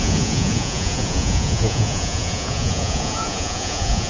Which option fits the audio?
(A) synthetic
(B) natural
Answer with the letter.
A